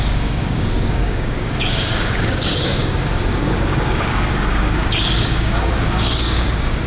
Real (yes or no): no